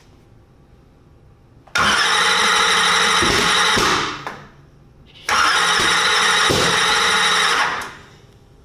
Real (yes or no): yes